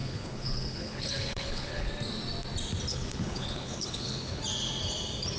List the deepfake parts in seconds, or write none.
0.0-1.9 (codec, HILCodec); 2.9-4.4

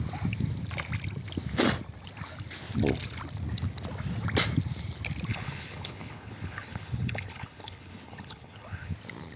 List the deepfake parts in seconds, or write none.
5.3-8.9 (codec, HILCodec)

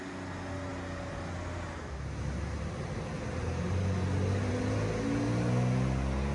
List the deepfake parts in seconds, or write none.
none